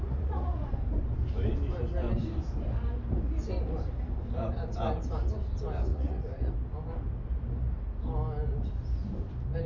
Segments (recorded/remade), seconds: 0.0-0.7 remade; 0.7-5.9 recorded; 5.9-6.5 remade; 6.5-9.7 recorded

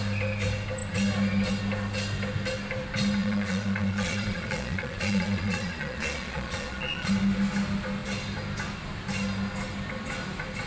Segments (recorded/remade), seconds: 0.0-3.2 recorded; 3.2-7.1 remade; 7.1-10.7 recorded

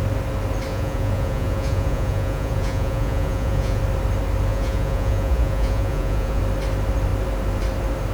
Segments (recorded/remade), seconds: 0.0-0.7 recorded; 0.7-3.8 remade; 3.8-4.5 recorded; 4.5-6.4 remade; 6.4-8.1 recorded